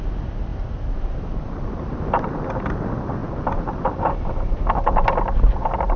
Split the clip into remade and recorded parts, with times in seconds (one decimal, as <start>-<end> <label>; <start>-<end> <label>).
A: 0.0-6.0 recorded